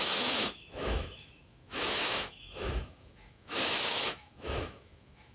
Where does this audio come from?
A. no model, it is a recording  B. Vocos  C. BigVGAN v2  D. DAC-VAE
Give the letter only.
D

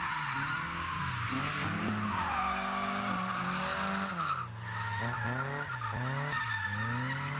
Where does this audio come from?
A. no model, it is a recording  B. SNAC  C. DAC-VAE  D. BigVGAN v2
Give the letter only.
A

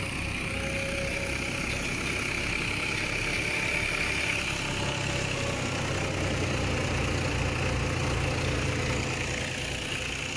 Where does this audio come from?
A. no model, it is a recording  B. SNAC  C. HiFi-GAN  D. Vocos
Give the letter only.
A